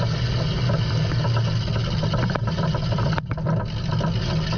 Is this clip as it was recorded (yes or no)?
yes